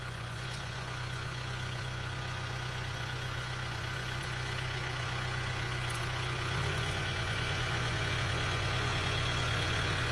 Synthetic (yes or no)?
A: yes